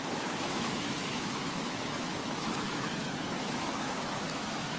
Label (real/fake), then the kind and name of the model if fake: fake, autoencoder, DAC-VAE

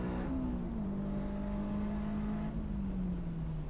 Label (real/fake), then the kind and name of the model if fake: real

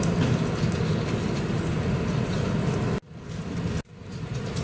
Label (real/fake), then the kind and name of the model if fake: real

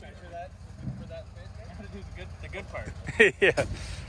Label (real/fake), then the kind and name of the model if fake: real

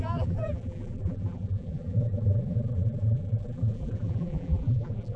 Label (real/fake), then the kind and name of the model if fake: fake, vocoder, BigVGAN v2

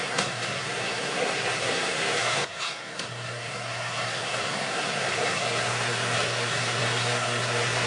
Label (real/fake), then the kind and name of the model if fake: fake, codec, SNAC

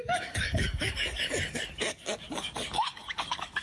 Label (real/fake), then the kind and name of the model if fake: fake, codec, DAC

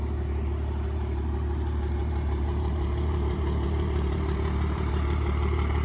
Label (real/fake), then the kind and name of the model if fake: fake, vocoder, BigVGAN v2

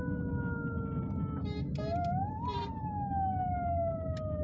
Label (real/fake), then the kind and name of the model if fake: real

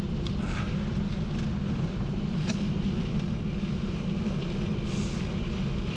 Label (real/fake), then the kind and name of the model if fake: real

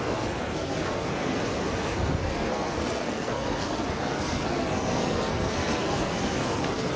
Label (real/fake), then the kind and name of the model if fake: fake, codec, SNAC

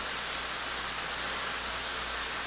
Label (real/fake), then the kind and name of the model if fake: real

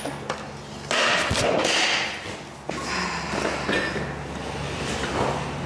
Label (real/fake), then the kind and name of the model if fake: real